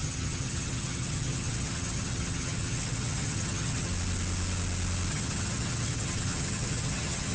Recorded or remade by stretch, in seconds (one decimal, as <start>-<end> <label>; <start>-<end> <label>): 0.0-3.9 remade; 3.9-5.1 recorded; 5.1-7.3 remade